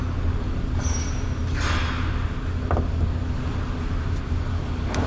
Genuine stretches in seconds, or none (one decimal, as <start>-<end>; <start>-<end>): 0.0-5.1